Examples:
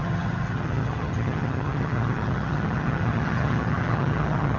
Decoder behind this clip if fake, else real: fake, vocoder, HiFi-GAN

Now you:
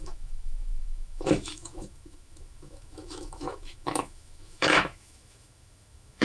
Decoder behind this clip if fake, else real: fake, autoencoder, DAC-VAE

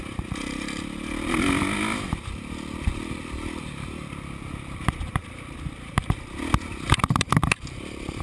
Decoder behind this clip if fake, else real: fake, vocoder, BigVGAN v2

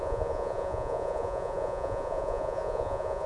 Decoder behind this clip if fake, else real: fake, vocoder, Vocos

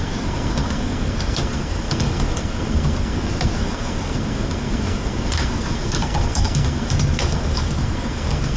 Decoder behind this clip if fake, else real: fake, codec, SNAC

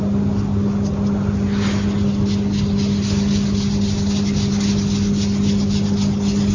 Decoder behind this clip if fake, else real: real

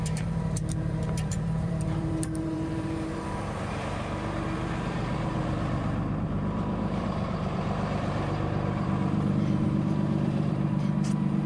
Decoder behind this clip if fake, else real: fake, vocoder, BigVGAN v2